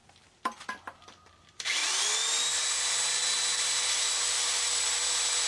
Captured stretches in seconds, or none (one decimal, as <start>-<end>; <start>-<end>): 0.0-1.8; 4.8-5.5